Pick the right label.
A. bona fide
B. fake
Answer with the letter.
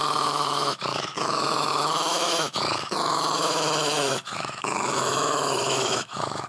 B